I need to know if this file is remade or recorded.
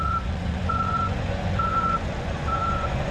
remade